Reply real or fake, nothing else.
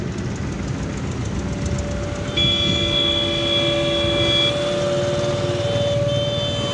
real